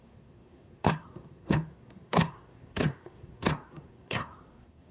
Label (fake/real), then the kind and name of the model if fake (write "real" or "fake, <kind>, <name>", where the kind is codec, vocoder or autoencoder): fake, codec, SNAC